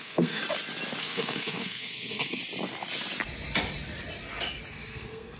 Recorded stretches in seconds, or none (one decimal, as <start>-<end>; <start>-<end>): 0.4-1.0; 2.4-4.7

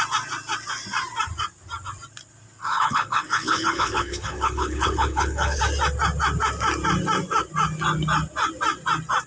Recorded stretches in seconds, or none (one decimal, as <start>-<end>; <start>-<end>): 0.0-2.6; 5.6-9.3

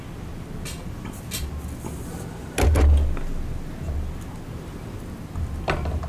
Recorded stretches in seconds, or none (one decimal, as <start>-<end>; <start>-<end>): 0.0-6.1